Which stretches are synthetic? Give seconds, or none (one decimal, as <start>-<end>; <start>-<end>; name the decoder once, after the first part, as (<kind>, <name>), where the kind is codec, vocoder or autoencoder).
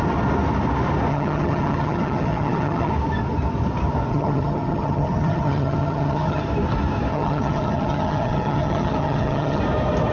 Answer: 1.1-2.9 (vocoder, HiFi-GAN); 4.1-6.4; 7.1-9.6